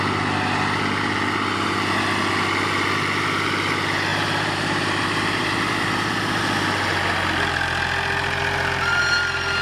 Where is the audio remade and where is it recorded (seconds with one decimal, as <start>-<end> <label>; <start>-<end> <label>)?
0.0-4.1 recorded; 4.1-6.4 remade; 6.4-9.6 recorded